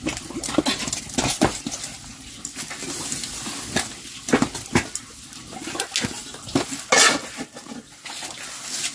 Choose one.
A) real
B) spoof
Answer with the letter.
A